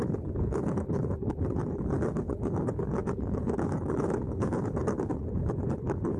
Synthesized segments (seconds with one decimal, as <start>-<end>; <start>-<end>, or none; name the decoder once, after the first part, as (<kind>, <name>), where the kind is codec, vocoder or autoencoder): 0.0-6.2 (codec, HILCodec)